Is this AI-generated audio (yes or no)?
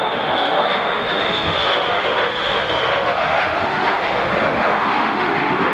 yes